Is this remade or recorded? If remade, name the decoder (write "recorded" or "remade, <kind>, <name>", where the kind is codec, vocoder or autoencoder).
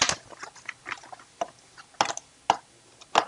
recorded